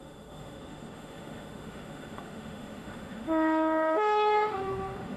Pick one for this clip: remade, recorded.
remade